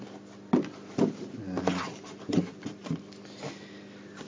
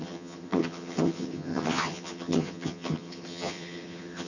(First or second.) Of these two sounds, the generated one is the second